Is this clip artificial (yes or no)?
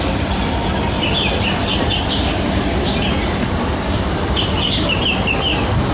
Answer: no